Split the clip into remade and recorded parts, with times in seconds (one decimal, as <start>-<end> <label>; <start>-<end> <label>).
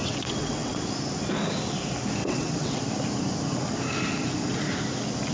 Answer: 0.0-0.8 remade; 0.8-2.2 recorded; 2.2-2.8 remade; 2.8-5.3 recorded